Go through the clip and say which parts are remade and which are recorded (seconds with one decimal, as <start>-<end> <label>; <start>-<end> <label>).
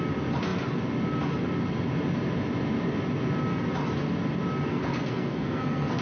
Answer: 0.0-4.7 recorded; 4.7-6.0 remade